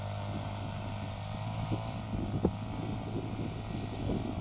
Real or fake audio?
real